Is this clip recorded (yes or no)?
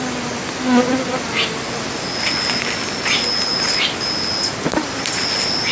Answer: yes